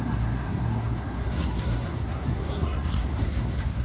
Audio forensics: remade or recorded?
remade